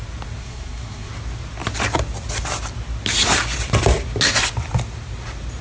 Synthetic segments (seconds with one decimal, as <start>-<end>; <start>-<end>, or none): 0.4-1.1